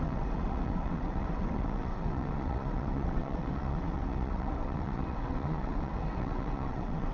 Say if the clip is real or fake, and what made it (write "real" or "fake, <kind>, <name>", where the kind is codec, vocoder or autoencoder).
fake, vocoder, WaveNeXt